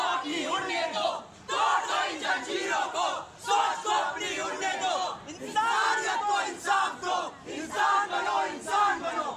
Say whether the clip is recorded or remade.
recorded